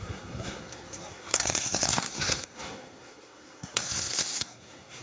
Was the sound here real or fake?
fake